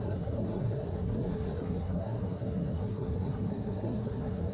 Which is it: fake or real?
fake